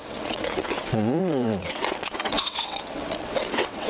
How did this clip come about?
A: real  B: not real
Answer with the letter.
B